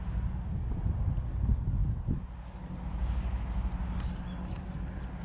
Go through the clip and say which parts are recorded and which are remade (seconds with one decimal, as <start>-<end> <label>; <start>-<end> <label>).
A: 0.0-5.2 recorded